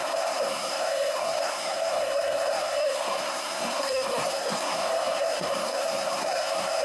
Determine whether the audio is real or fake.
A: fake